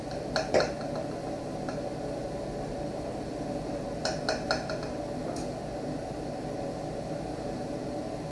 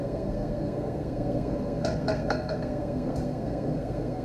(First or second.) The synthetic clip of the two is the second